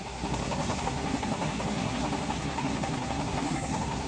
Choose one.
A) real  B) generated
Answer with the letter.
B